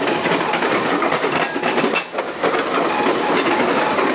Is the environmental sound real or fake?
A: real